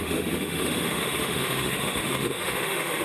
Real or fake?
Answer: fake